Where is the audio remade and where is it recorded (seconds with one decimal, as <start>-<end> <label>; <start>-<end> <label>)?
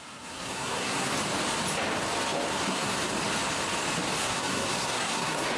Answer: 0.0-1.1 remade; 1.1-2.5 recorded; 2.5-3.0 remade; 3.0-4.2 recorded; 4.2-5.6 remade